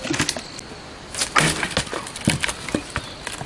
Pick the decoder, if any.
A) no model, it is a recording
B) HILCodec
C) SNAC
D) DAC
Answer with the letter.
A